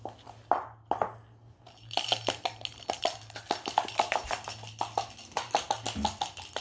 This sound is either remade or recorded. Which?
recorded